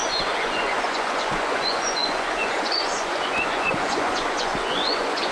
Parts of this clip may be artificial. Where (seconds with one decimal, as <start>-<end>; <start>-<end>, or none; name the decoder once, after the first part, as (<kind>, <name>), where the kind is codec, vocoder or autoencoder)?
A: 0.0-5.3 (vocoder, Vocos)